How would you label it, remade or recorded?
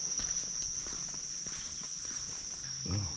recorded